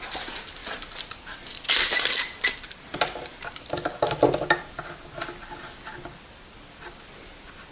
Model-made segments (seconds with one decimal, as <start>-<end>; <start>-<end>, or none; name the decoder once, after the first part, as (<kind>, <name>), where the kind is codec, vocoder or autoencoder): none